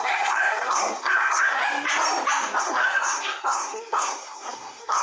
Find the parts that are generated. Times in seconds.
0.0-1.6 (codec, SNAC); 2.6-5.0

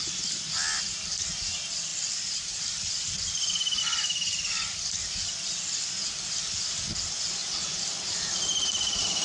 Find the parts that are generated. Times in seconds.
1.9-3.8 (vocoder, BigVGAN v2)

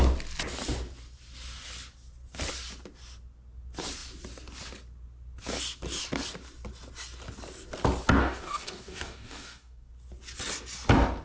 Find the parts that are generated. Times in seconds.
8.2-9.9 (codec, DAC)

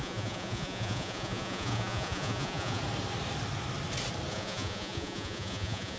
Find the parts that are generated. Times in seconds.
0.0-2.8 (vocoder, Vocos); 4.3-6.0